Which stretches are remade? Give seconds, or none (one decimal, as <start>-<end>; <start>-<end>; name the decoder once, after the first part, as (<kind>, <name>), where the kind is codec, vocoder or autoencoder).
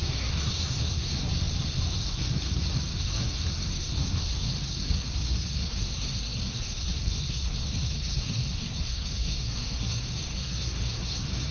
0.0-1.3 (codec, SNAC); 1.9-11.5